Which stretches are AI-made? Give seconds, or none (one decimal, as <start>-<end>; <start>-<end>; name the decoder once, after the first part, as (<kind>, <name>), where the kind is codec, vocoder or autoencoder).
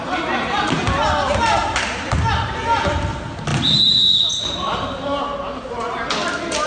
none